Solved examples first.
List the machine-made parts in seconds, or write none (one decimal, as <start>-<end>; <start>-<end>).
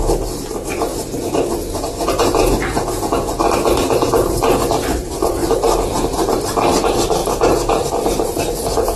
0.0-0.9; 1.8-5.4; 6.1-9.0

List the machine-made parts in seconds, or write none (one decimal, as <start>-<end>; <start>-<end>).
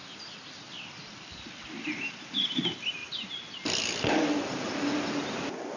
none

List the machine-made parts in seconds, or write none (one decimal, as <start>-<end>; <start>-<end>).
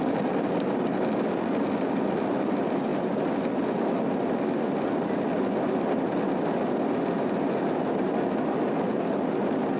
none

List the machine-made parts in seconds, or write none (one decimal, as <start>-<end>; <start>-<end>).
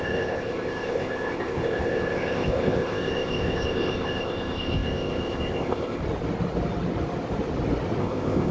0.0-6.0; 8.0-8.5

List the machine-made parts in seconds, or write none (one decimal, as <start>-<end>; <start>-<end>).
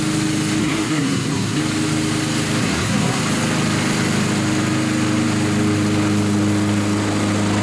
0.6-1.6; 2.6-3.2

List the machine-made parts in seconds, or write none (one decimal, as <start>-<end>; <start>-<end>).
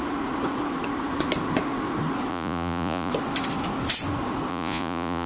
2.3-3.1; 4.5-5.3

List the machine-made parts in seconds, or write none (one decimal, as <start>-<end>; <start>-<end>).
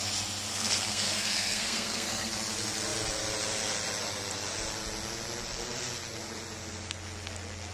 0.5-2.3